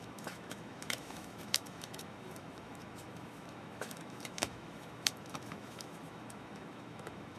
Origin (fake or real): fake